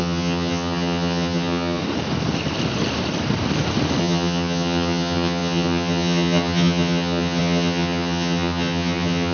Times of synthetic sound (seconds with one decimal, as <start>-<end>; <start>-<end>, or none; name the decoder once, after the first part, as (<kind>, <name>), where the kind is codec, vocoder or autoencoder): 0.0-1.8 (vocoder, HiFi-GAN); 4.0-9.3